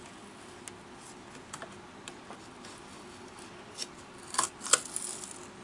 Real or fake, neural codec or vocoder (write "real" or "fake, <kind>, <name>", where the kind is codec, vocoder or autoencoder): real